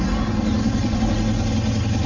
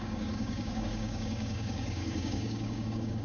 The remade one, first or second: second